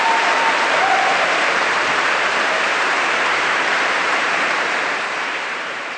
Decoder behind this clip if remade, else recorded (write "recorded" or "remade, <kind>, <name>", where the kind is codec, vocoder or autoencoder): remade, vocoder, BigVGAN v2